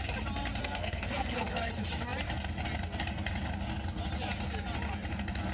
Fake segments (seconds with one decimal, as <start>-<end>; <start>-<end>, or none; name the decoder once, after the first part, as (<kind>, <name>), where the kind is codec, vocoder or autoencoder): 0.6-1.7 (codec, SNAC)